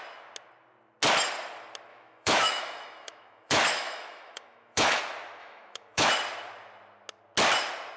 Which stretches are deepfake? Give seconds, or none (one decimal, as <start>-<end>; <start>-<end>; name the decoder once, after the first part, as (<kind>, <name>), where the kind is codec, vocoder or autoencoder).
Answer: 1.9-5.0 (autoencoder, DAC-VAE); 5.4-6.1